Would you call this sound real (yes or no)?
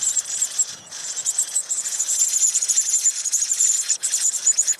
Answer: no